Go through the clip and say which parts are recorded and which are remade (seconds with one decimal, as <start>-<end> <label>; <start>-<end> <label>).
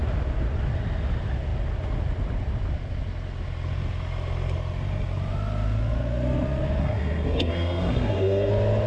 0.0-6.8 recorded; 6.8-8.5 remade; 8.5-8.9 recorded